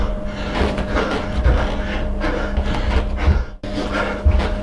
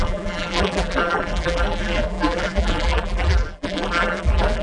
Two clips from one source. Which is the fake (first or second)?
second